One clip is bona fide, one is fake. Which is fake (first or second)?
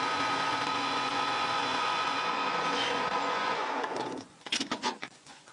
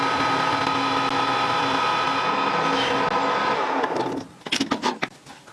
first